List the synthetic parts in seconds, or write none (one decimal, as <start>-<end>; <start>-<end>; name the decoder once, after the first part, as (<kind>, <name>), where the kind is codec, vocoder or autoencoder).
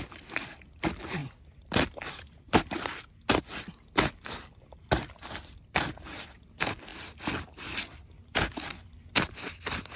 none